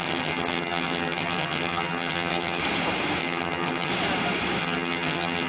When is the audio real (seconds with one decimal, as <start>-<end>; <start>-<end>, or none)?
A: 2.6-3.2; 3.9-4.6